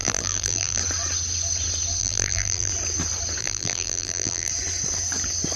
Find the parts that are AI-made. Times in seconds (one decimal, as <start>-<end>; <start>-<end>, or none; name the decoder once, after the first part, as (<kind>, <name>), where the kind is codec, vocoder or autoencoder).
0.0-0.8 (vocoder, BigVGAN v2); 2.0-2.7; 3.4-4.5